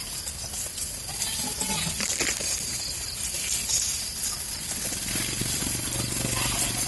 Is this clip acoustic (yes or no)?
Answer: yes